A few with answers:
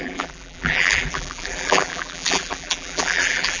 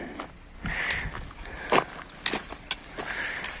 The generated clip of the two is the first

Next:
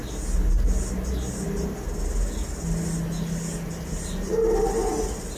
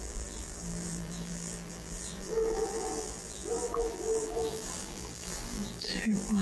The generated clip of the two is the second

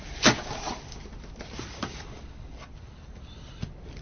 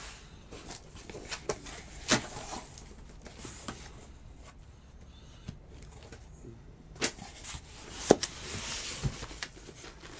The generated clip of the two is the first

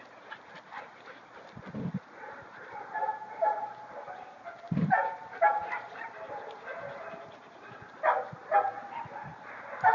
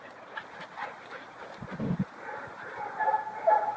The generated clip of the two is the second